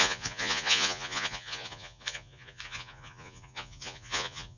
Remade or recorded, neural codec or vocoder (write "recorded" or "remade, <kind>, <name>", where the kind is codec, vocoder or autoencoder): remade, vocoder, Vocos